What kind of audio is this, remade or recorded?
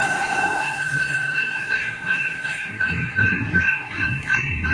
remade